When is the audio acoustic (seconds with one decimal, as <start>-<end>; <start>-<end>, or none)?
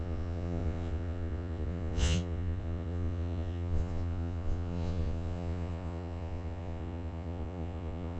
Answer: none